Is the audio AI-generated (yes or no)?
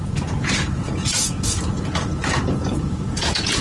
yes